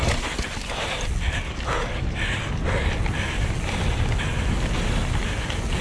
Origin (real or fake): real